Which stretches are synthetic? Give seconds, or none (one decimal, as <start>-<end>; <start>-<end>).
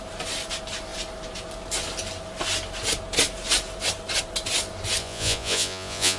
5.0-6.2